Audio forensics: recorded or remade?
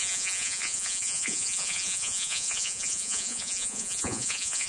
remade